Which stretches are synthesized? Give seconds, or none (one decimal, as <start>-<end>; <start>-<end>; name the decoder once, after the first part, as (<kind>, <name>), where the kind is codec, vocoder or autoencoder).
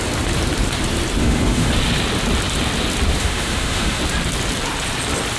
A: 1.2-1.7 (autoencoder, DAC-VAE); 3.2-4.0